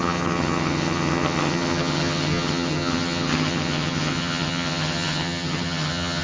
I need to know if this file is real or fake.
fake